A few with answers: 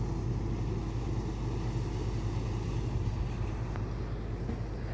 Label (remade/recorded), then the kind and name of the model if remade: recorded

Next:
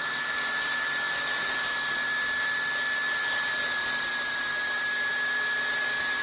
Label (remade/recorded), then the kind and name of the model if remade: recorded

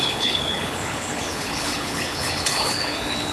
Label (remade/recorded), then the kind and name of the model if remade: remade, codec, HILCodec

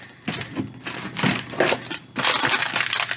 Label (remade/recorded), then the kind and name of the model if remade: recorded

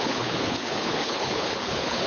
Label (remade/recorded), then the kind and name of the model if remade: remade, codec, HILCodec